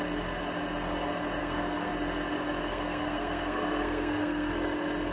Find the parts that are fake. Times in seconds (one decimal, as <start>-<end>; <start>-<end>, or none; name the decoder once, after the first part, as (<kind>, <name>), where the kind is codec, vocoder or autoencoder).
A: 1.4-1.9 (codec, SNAC); 2.6-4.5